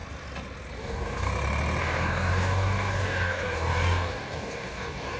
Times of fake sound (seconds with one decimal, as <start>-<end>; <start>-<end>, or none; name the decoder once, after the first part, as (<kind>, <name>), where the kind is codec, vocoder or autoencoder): 0.8-1.3 (codec, DAC); 1.8-5.2